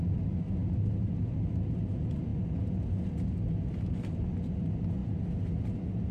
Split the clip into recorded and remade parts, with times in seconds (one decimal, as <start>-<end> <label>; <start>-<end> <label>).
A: 0.0-6.1 recorded

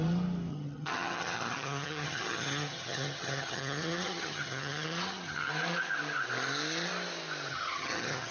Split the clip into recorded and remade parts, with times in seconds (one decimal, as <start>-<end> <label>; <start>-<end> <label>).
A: 0.0-0.5 recorded; 0.5-5.5 remade; 5.5-7.5 recorded; 7.5-8.3 remade

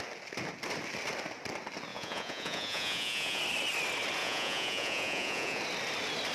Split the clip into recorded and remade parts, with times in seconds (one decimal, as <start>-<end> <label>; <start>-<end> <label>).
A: 0.0-1.9 recorded; 1.9-3.4 remade; 3.4-4.2 recorded; 4.2-5.6 remade; 5.6-6.3 recorded

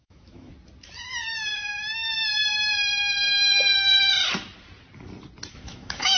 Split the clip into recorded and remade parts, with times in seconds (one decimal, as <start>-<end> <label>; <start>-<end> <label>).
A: 0.0-0.5 remade; 0.5-1.4 recorded; 1.4-2.1 remade; 2.1-5.5 recorded; 5.5-6.2 remade

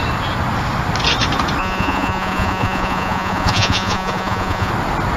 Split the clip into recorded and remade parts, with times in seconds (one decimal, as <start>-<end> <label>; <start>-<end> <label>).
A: 0.0-1.6 recorded; 1.6-4.7 remade; 4.7-5.2 recorded